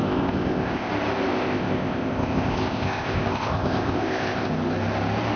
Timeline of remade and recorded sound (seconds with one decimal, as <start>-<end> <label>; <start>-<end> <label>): 0.0-0.9 remade; 0.9-1.3 recorded; 1.3-4.5 remade; 4.5-5.4 recorded